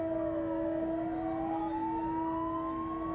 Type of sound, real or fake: real